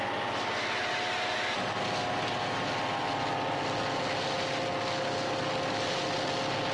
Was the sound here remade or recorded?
recorded